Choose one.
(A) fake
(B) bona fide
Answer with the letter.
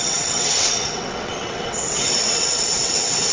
A